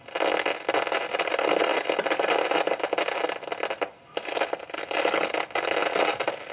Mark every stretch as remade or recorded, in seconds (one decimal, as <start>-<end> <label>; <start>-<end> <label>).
0.0-1.7 recorded; 1.7-2.9 remade; 2.9-6.5 recorded